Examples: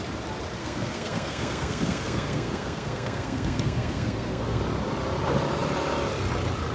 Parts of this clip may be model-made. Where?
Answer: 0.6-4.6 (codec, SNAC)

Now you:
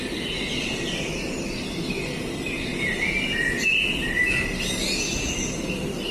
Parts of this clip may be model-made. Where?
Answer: none

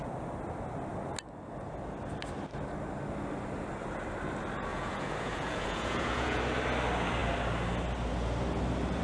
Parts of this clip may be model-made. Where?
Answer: 4.7-6.4 (vocoder, Vocos)

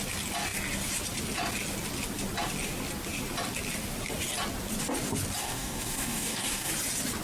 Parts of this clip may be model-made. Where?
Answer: 5.4-6.7 (codec, DAC)

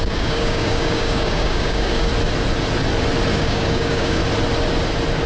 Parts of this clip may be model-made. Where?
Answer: 0.0-2.1 (codec, DAC); 3.3-4.2

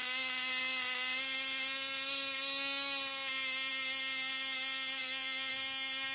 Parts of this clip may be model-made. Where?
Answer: 5.0-5.5 (vocoder, BigVGAN v2)

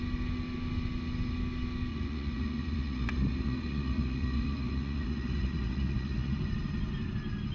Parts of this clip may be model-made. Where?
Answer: 1.9-6.4 (vocoder, Vocos)